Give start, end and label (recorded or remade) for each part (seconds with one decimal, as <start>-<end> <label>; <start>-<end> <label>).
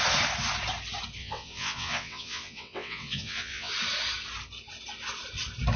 0.0-1.2 recorded; 1.2-3.7 remade; 3.7-5.8 recorded